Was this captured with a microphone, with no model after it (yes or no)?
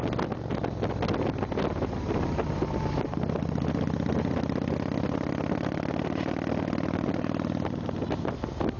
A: yes